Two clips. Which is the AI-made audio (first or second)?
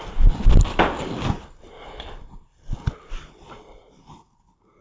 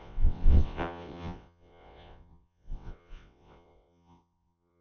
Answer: second